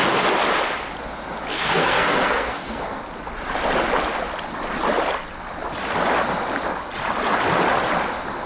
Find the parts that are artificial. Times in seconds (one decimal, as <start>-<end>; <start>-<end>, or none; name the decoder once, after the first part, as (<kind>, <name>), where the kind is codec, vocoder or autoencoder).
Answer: 1.5-3.0 (codec, SNAC)